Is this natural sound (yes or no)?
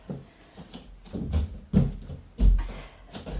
yes